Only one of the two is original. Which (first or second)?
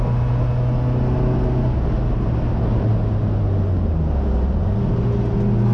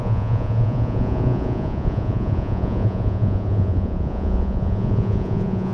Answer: first